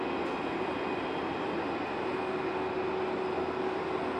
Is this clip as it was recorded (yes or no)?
yes